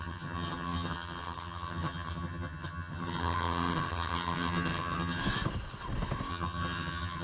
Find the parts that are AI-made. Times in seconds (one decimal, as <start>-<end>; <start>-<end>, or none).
0.0-5.2; 6.3-7.2